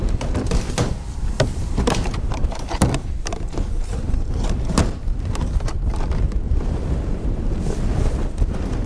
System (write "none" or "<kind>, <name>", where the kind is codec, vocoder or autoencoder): vocoder, BigVGAN v2